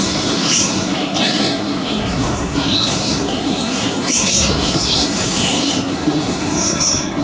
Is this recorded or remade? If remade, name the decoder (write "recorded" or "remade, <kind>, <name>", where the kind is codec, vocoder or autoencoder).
remade, codec, SNAC